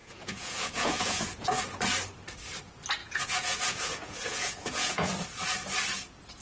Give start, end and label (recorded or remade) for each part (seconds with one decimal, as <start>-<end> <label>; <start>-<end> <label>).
0.0-1.6 remade; 1.6-3.0 recorded; 3.0-5.1 remade; 5.1-6.4 recorded